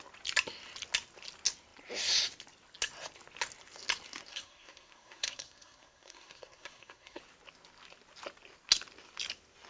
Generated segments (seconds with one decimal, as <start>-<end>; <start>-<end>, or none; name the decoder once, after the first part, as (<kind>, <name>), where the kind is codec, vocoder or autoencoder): 4.3-7.2 (codec, SNAC)